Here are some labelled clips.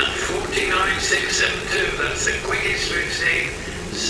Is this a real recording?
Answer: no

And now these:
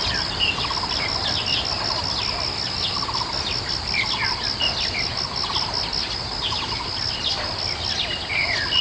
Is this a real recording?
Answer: yes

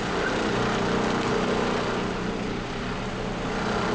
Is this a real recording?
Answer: yes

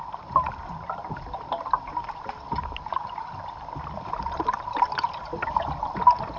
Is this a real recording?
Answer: yes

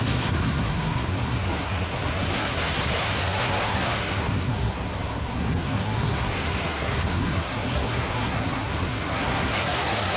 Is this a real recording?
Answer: no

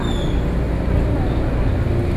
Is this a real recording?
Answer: yes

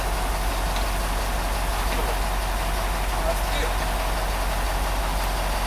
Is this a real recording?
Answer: yes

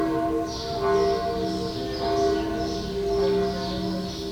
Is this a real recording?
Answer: yes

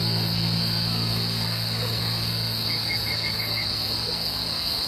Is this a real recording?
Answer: no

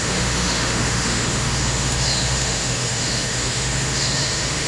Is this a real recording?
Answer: no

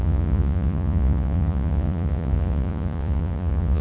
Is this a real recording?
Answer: no